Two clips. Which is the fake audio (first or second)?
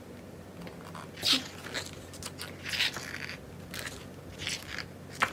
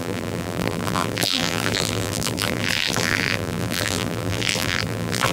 second